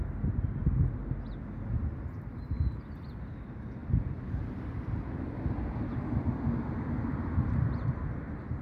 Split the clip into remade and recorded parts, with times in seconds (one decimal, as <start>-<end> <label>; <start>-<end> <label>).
0.0-8.6 recorded